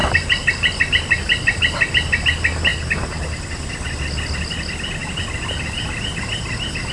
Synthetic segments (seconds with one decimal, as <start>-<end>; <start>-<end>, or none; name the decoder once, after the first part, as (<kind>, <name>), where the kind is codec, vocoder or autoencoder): 0.0-0.9 (vocoder, BigVGAN v2)